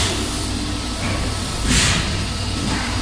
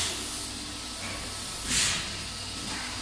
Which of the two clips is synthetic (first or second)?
first